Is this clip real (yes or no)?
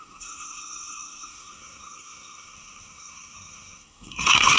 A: no